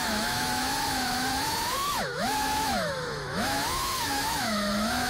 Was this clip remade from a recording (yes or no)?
yes